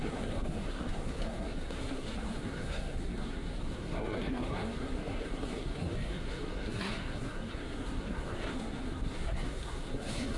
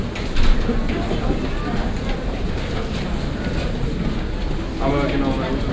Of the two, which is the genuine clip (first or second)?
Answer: second